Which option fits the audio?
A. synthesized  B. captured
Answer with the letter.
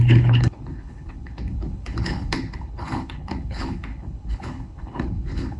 A